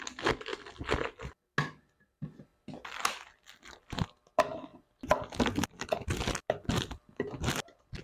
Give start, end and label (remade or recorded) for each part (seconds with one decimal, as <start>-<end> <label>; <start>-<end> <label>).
0.0-0.5 recorded; 0.5-1.3 remade; 1.3-2.5 recorded; 2.5-3.9 remade; 3.9-4.7 recorded; 4.7-7.1 remade; 7.1-8.0 recorded